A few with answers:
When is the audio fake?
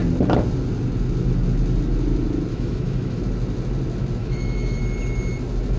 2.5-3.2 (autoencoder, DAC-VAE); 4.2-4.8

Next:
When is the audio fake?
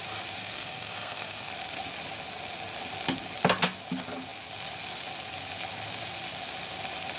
0.4-1.5 (codec, SNAC)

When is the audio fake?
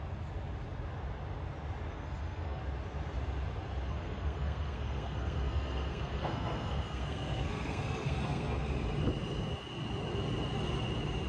1.9-2.6 (codec, SNAC); 3.9-8.7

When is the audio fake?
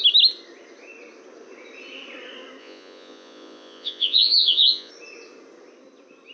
2.6-4.9 (vocoder, Vocos)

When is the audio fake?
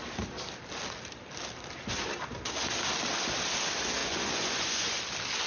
4.0-5.0 (vocoder, Vocos)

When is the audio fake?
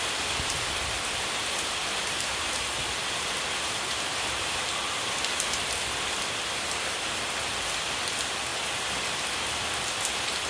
1.8-4.6 (vocoder, BigVGAN v2)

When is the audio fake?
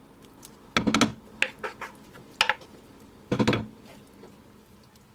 none